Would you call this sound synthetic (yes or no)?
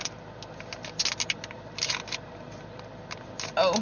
no